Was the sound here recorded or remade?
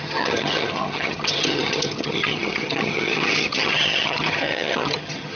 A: remade